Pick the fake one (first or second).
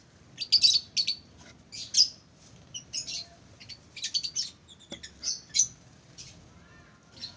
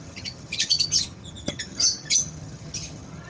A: second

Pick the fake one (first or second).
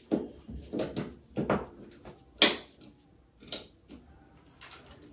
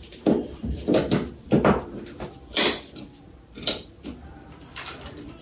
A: second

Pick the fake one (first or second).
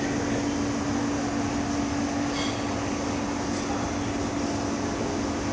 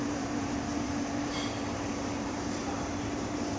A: second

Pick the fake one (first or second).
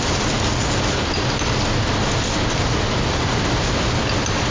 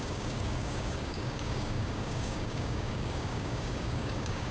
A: second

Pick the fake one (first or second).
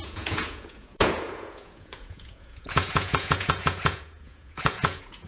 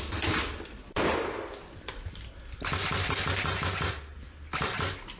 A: first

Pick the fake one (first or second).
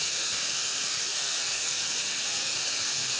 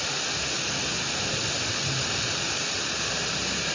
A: first